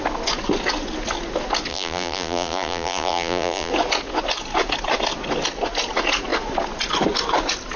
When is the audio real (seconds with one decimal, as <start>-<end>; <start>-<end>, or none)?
0.0-1.7; 3.7-7.8